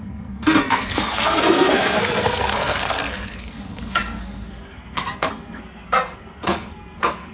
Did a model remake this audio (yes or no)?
yes